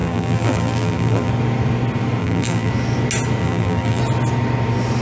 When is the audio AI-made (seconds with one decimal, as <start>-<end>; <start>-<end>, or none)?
0.0-1.3; 2.2-2.7; 3.4-4.0